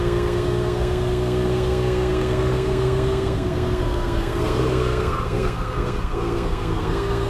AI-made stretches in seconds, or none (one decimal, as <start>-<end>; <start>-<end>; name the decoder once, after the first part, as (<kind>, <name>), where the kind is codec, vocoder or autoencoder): 0.0-7.3 (codec, SNAC)